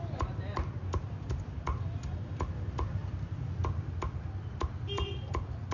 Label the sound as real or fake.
real